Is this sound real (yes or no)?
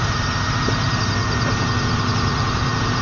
yes